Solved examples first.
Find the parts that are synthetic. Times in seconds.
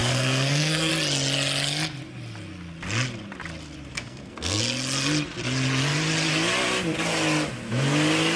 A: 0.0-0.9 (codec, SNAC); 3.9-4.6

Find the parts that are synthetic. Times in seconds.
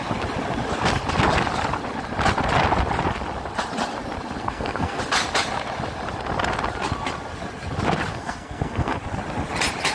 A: 4.4-5.0 (codec, SNAC); 8.1-9.0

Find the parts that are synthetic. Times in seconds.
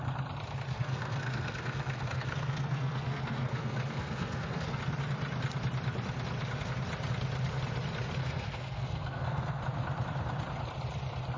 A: 0.7-4.8 (codec, SNAC); 8.2-9.6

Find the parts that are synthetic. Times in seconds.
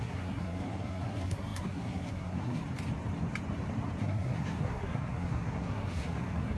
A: 0.0-2.6 (codec, SNAC); 4.0-6.6